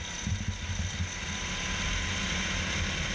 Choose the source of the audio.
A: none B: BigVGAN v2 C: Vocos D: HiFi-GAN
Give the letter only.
A